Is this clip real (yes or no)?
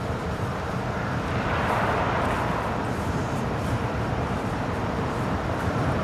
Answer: no